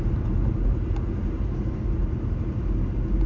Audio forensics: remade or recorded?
recorded